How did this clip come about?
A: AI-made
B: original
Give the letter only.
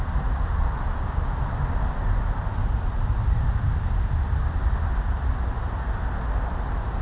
B